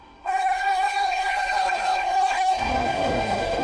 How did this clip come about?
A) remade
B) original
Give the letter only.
A